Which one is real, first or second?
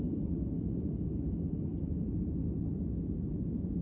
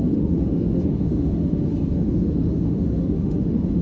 first